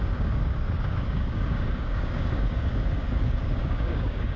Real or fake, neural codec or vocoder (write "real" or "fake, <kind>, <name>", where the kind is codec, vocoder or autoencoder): fake, codec, DAC